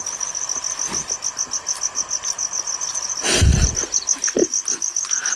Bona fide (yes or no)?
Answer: yes